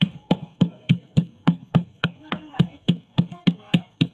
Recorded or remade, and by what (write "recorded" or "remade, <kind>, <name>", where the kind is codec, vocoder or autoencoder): remade, codec, SNAC